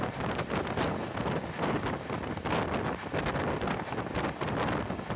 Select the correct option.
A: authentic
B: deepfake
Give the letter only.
A